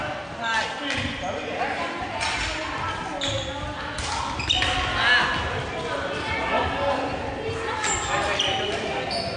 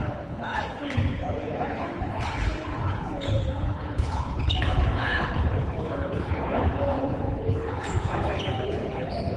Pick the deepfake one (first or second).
second